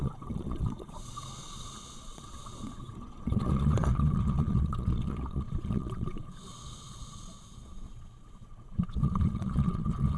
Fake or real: fake